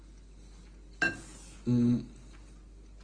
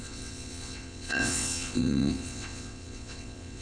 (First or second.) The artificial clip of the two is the second